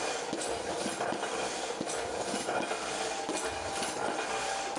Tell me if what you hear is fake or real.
real